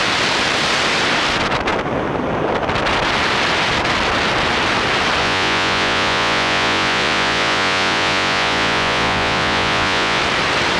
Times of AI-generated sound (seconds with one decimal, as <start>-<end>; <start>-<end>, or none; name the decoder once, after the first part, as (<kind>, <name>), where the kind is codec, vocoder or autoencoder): 5.2-10.2 (vocoder, Vocos)